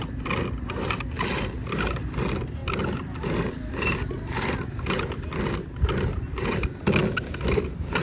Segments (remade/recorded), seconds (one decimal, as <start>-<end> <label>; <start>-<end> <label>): 0.0-8.0 recorded